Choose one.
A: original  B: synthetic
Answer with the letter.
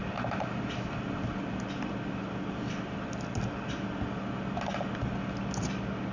A